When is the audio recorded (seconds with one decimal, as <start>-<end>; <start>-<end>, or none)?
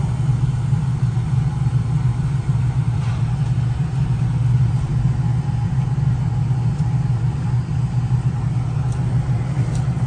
4.9-5.5